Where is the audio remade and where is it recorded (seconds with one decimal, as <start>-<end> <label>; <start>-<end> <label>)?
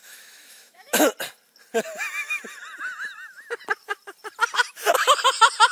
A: 0.0-1.1 remade; 1.1-5.7 recorded